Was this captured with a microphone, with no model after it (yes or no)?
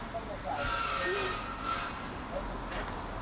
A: yes